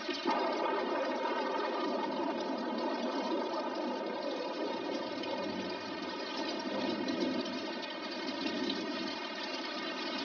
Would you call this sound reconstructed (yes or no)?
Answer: yes